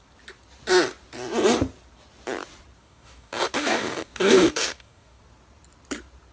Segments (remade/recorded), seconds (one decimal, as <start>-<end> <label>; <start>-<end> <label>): 0.0-2.8 recorded; 2.8-5.2 remade; 5.2-6.3 recorded